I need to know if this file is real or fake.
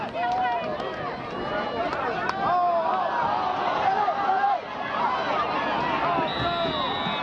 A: real